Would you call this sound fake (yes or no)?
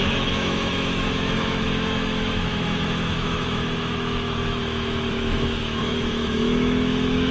yes